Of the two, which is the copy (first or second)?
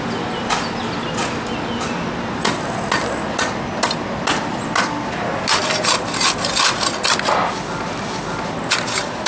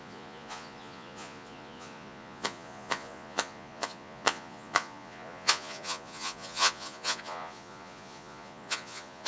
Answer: second